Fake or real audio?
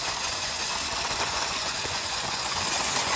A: fake